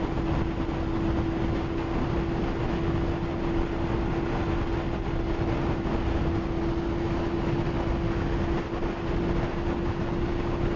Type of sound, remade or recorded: recorded